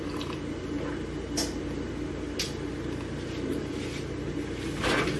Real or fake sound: real